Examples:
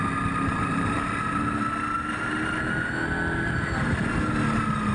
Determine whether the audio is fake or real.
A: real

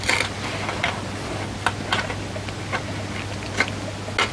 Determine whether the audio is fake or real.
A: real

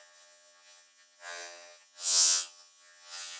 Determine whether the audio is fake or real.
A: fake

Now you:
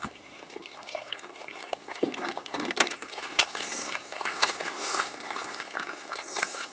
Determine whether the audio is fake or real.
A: fake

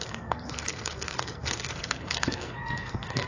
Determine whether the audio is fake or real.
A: fake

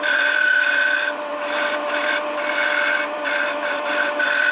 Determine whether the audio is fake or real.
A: fake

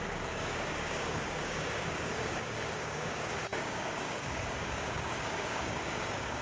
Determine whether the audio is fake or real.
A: fake